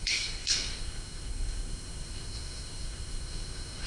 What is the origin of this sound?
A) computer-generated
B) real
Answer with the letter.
A